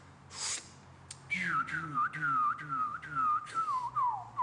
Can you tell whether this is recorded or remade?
recorded